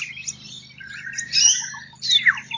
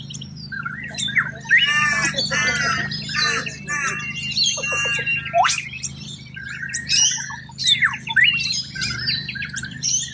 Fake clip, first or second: second